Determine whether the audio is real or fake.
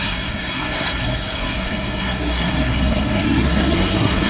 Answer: fake